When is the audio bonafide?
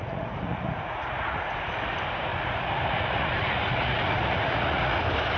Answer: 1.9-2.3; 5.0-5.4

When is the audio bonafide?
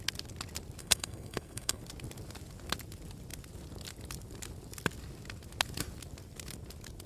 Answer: 0.0-0.8; 1.8-7.1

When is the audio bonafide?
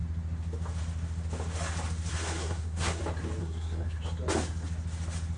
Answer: 0.0-2.1; 3.0-3.4; 4.0-5.4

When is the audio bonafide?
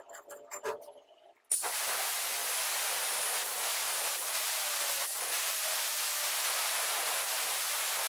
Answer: 0.0-8.1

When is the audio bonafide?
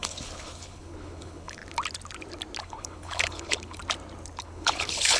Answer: 1.6-2.6; 3.8-4.4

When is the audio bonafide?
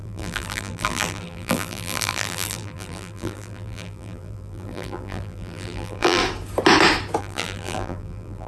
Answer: 6.2-7.2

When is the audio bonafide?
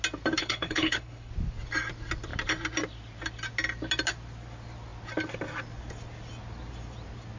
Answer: 0.0-0.4; 1.3-7.4